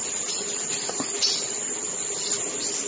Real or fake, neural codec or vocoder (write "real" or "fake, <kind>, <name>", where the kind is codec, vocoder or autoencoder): real